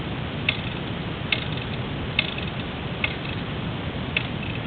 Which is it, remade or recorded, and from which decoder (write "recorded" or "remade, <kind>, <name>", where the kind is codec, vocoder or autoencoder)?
recorded